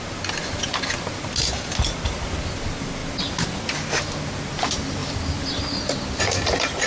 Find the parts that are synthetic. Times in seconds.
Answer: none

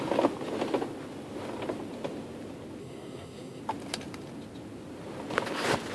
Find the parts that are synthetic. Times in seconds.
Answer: 2.8-3.6 (codec, SNAC)

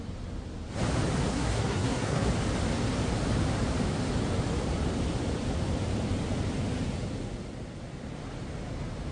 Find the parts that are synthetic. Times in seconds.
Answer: 1.3-2.3 (codec, SNAC)

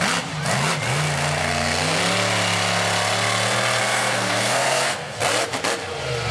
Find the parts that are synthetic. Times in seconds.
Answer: 1.4-2.0 (codec, SNAC); 3.8-5.2

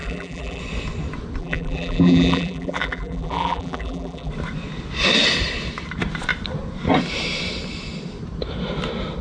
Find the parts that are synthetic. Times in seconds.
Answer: 0.0-0.6 (vocoder, BigVGAN v2); 1.4-4.3

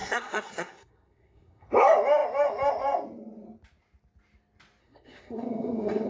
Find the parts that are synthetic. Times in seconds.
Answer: 0.0-1.7 (codec, SNAC); 4.8-6.1

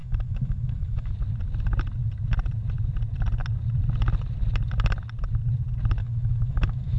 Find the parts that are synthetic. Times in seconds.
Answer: 0.0-1.1 (autoencoder, DAC-VAE); 6.0-7.0